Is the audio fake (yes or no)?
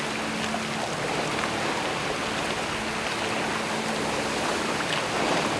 no